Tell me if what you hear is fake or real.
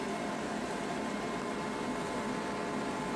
fake